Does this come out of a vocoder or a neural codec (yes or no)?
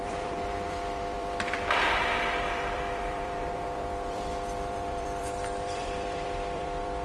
yes